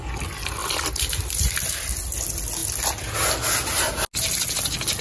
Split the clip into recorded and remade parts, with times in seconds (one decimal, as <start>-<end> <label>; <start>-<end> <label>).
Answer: 0.0-0.6 recorded; 0.6-1.7 remade; 1.7-5.0 recorded